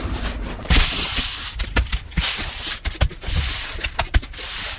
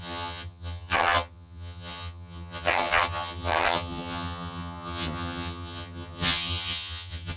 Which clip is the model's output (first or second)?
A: second